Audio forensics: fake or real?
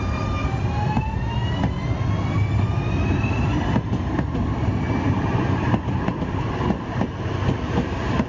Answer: real